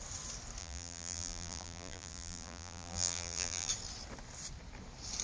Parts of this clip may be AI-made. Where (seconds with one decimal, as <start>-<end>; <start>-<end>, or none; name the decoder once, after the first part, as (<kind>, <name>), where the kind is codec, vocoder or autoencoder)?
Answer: 0.6-3.7 (vocoder, BigVGAN v2)